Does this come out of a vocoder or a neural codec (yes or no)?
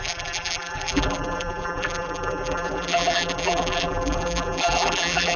yes